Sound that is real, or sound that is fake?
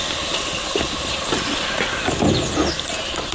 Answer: real